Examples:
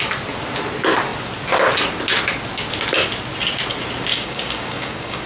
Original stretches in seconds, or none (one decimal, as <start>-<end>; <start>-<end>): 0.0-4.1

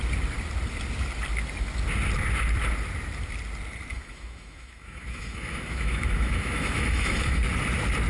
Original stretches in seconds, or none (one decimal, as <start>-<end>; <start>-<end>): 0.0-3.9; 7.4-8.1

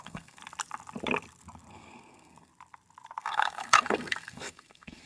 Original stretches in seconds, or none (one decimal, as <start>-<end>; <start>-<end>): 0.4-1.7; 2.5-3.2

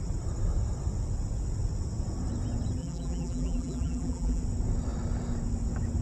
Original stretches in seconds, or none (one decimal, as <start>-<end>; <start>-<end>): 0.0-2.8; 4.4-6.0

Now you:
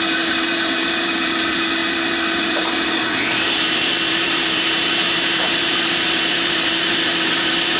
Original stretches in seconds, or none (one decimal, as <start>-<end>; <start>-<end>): none